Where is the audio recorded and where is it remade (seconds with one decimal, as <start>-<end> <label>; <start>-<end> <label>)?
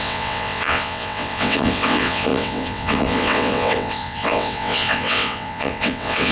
0.0-6.3 remade